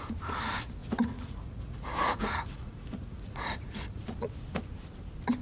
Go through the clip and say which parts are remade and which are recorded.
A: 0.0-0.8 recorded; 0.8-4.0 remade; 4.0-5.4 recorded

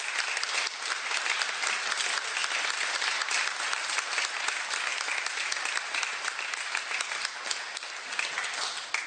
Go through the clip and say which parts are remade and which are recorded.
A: 0.0-9.1 recorded

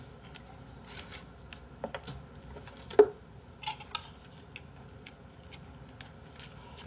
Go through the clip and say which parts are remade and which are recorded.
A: 0.0-6.9 recorded

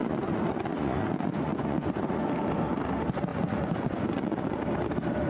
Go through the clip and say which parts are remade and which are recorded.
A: 0.0-2.2 remade; 2.2-3.3 recorded; 3.3-4.6 remade; 4.6-5.3 recorded

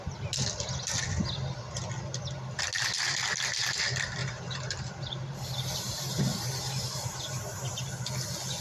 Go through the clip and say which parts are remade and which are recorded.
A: 0.0-4.2 recorded; 4.2-7.8 remade; 7.8-8.6 recorded